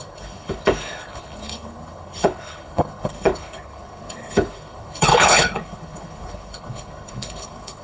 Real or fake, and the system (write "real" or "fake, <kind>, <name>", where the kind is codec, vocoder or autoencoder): fake, codec, HILCodec